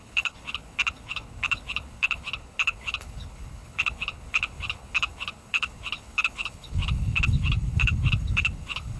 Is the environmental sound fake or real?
fake